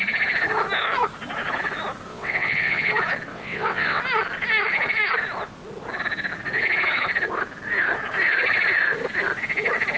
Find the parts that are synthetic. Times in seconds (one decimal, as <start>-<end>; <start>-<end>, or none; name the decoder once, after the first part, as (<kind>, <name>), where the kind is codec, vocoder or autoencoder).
2.1-2.9 (vocoder, WaveNeXt); 3.3-4.0